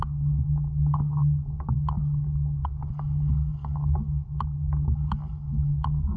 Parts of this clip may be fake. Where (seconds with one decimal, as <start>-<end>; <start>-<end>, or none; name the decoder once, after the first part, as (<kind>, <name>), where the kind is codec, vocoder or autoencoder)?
none